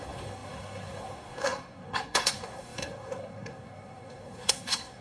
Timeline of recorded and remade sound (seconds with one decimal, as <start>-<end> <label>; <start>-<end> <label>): 0.0-5.0 remade